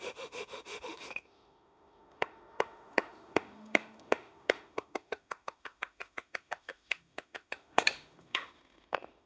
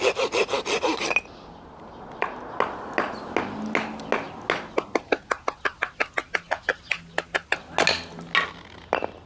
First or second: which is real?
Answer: second